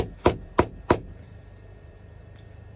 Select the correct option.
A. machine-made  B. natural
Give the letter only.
A